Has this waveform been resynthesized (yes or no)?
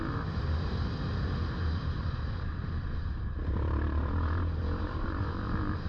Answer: yes